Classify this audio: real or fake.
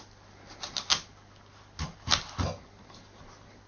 real